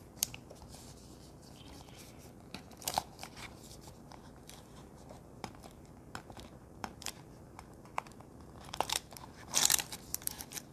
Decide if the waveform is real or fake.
fake